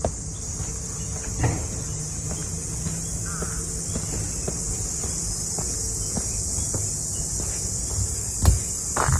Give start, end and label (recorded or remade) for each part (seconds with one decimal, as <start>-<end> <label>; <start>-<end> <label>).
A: 0.0-2.4 recorded; 2.4-2.9 remade; 2.9-9.2 recorded